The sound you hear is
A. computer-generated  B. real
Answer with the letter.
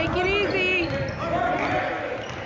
B